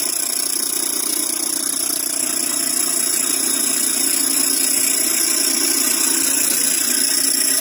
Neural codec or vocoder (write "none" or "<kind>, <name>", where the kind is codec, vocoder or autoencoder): none